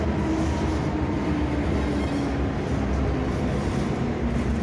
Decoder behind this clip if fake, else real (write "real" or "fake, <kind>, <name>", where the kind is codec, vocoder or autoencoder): real